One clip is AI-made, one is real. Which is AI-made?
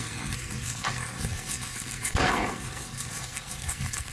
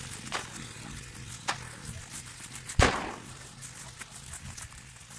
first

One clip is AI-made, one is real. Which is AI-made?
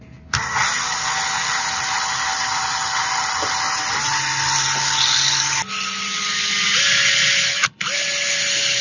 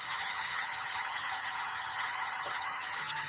second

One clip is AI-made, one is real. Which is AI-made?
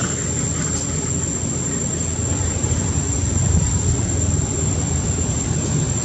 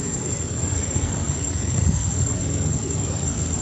second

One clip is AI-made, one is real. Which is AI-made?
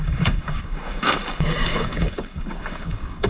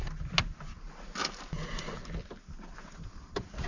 first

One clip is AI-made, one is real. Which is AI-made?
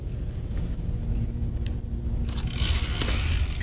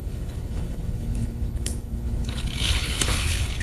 second